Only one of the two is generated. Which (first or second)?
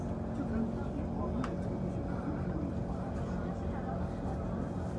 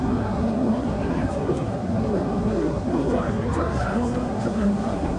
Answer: second